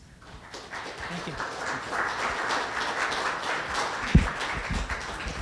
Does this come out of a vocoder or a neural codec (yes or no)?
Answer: no